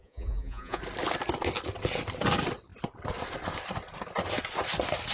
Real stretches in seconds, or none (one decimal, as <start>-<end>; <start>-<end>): 0.8-5.1